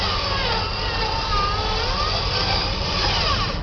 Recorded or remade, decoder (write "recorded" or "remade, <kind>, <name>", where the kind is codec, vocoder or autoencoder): recorded